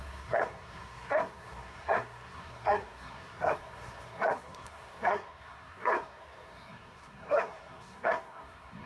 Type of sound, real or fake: fake